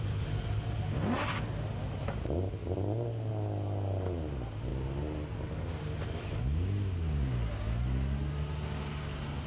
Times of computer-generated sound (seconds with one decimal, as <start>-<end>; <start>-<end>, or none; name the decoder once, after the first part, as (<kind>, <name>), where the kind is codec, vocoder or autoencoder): none